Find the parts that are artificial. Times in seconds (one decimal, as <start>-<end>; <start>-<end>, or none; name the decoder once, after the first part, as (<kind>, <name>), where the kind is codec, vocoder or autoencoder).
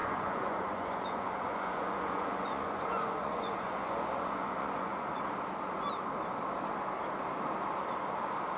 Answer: 0.0-5.2 (vocoder, Vocos)